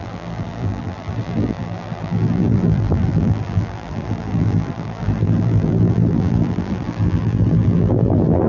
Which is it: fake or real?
fake